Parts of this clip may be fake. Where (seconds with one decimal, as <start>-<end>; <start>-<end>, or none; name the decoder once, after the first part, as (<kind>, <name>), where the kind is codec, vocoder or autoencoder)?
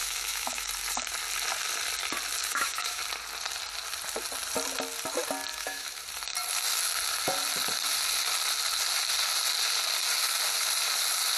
0.0-0.7 (autoencoder, DAC-VAE); 2.4-3.0; 5.5-6.0